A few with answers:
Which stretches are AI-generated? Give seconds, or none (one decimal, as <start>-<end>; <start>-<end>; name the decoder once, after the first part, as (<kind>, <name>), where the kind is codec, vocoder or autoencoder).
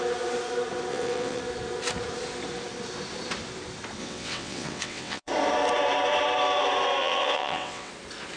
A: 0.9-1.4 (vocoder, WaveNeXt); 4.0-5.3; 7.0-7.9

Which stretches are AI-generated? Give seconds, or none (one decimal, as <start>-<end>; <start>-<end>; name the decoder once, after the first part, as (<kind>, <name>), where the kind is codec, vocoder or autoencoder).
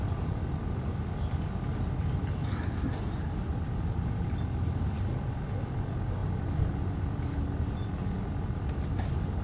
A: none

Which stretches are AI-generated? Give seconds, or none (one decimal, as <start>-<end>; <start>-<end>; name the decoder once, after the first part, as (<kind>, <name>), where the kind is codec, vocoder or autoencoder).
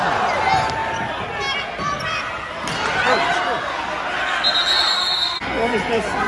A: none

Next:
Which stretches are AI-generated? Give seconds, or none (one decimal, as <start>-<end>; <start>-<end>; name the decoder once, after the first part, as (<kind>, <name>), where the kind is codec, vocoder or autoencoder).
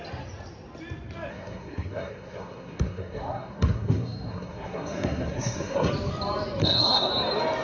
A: 1.3-5.9 (codec, SNAC); 6.6-7.1